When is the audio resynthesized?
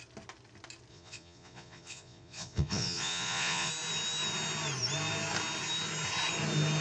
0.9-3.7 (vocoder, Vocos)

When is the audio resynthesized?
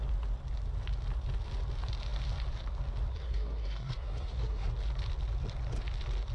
3.1-4.7 (codec, SNAC)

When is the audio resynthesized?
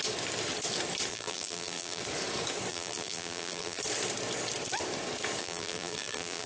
1.1-2.0 (vocoder, BigVGAN v2); 2.7-3.8; 5.4-6.5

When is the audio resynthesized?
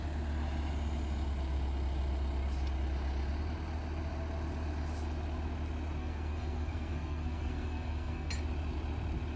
6.0-8.3 (codec, SNAC)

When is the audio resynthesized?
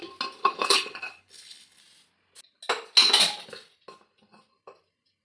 0.4-1.8 (codec, HILCodec)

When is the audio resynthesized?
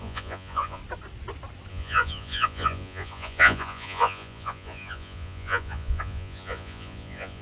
0.0-0.8 (vocoder, Vocos); 1.7-7.4